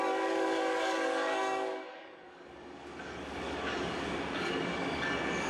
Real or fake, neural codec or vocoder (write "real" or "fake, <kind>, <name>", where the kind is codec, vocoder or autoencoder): fake, codec, DAC